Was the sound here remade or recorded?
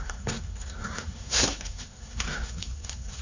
remade